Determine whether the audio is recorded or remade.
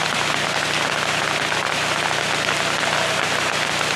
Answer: recorded